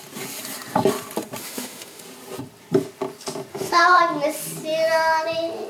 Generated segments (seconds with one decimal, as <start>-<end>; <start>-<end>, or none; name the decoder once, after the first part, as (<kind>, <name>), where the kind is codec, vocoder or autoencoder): 1.4-2.0 (autoencoder, DAC-VAE); 3.5-4.0